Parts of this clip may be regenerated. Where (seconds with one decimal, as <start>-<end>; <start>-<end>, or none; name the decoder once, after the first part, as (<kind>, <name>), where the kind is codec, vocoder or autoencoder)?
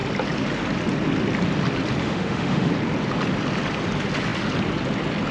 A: 2.0-2.7 (autoencoder, DAC-VAE)